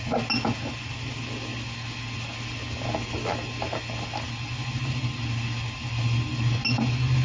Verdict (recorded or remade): recorded